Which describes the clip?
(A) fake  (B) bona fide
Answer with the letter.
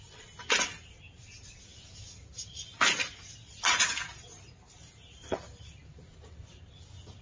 B